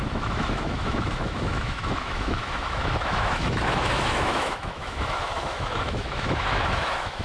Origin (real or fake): fake